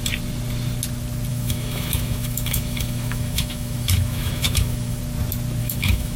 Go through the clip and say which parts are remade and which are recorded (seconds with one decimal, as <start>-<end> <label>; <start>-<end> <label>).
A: 0.0-1.3 recorded; 1.3-5.0 remade; 5.0-5.6 recorded; 5.6-6.2 remade